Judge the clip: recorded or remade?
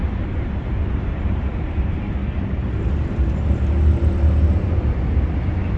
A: recorded